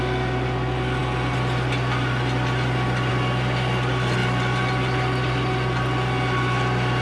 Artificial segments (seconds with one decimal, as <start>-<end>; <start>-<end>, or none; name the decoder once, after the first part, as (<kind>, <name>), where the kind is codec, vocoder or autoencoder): none